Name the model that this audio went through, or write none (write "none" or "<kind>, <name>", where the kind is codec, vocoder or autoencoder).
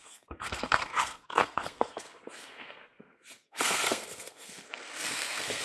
codec, SNAC